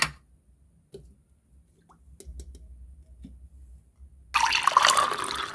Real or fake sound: real